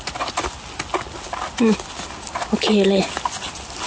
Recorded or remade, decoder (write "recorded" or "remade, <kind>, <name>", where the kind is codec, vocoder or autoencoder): recorded